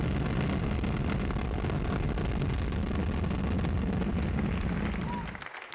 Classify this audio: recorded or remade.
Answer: recorded